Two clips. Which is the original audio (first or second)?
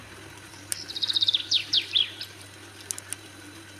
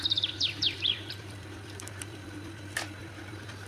first